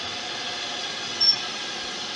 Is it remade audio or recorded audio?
recorded